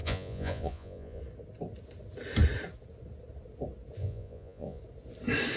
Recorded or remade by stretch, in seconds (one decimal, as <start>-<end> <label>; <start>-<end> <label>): 0.0-1.2 remade; 1.2-4.0 recorded; 4.0-4.8 remade; 4.8-5.6 recorded